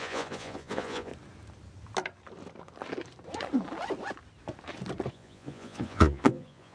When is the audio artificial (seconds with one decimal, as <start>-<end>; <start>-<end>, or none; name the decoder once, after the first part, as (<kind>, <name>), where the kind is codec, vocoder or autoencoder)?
0.0-1.1 (vocoder, Vocos); 5.1-6.7